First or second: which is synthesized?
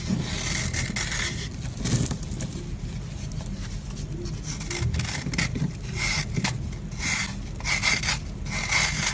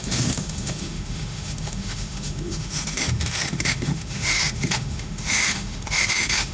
second